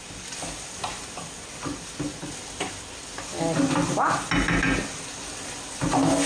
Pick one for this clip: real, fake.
real